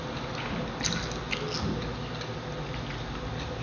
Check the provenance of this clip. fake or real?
real